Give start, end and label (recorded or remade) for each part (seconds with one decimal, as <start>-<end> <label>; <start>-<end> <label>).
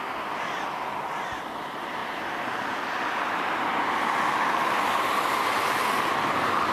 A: 0.0-6.7 recorded